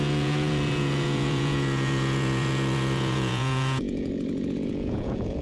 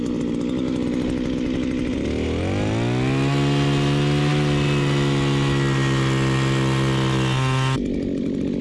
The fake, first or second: first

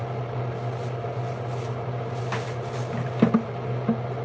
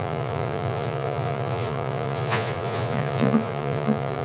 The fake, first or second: second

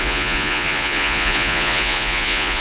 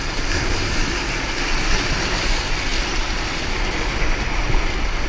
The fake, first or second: first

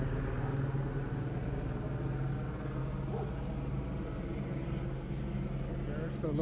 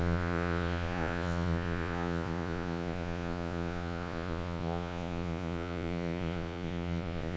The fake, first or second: second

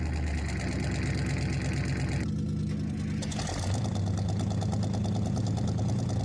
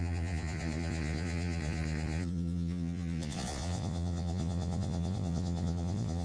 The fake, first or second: second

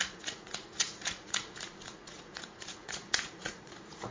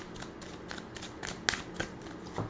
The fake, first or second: first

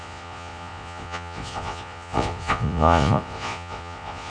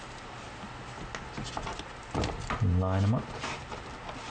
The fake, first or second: first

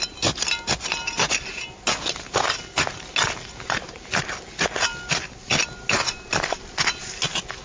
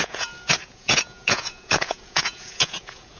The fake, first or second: second